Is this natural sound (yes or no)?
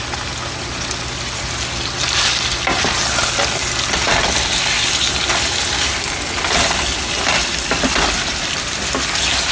yes